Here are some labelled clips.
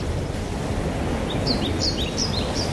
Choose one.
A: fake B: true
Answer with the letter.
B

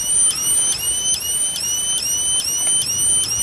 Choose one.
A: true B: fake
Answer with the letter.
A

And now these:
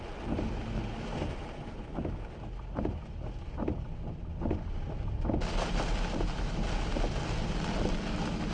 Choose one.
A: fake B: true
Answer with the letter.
B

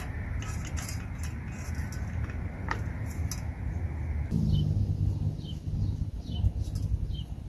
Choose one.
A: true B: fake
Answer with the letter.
A